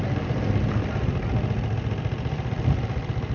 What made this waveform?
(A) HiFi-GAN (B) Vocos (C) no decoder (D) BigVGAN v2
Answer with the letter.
C